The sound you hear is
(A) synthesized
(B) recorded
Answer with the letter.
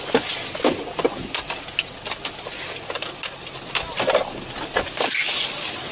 B